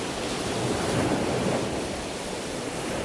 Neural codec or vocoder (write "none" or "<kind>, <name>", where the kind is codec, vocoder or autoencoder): none